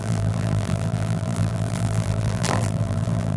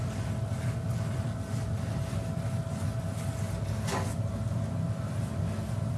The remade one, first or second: first